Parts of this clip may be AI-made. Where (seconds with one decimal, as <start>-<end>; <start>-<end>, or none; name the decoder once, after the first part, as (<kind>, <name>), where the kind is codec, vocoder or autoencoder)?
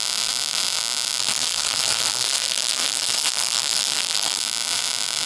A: 1.2-4.4 (codec, SNAC)